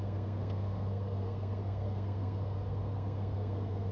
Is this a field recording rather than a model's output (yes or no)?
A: no